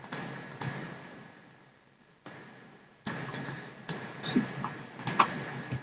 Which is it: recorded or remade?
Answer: recorded